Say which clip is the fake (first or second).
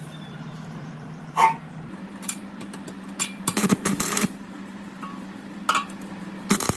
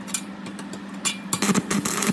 first